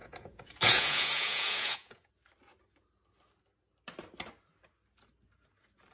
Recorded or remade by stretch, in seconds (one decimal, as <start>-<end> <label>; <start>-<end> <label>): 0.0-2.1 remade; 2.1-5.9 recorded